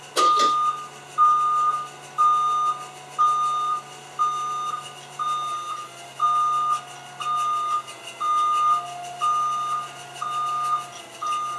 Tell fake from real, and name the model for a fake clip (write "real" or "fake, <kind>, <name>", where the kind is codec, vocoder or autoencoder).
real